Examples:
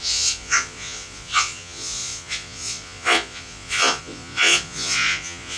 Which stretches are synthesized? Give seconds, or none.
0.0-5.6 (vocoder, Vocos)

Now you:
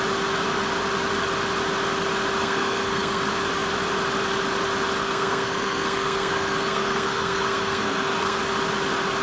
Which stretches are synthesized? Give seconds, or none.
2.4-3.2 (codec, SNAC); 5.0-8.4

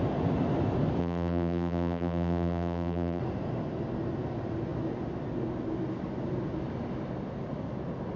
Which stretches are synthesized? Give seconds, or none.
1.0-3.2 (vocoder, BigVGAN v2)

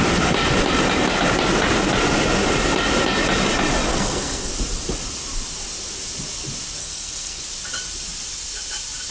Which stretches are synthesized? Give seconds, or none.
3.9-4.5 (codec, SNAC); 6.8-7.4

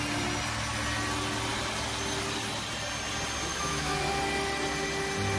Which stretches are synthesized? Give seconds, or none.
3.5-4.0 (autoencoder, DAC-VAE)

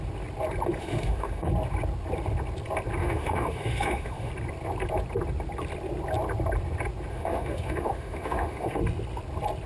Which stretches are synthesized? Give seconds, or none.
0.8-1.5 (autoencoder, DAC-VAE); 3.0-4.3; 7.1-8.8

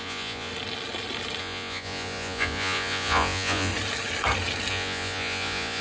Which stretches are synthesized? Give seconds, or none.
0.0-0.5 (vocoder, Vocos); 1.4-3.7; 4.7-5.8